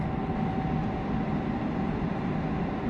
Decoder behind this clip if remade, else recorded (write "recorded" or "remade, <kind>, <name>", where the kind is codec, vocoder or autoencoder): recorded